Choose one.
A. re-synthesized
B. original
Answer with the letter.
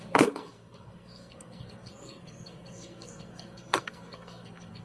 A